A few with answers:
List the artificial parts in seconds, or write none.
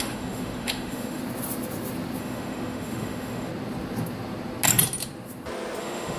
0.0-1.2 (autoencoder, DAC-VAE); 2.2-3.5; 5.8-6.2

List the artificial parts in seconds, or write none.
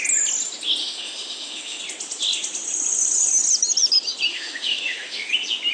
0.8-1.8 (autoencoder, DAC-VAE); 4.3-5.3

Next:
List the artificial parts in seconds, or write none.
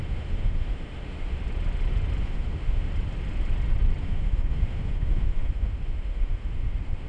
0.0-1.4 (autoencoder, DAC-VAE); 2.2-2.9; 4.0-7.1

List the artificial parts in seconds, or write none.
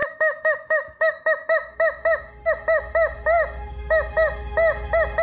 0.0-1.1 (autoencoder, DAC-VAE)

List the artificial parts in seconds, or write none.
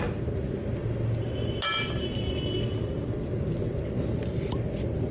none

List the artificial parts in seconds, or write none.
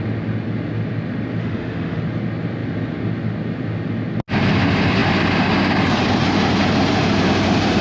1.4-2.0 (autoencoder, DAC-VAE)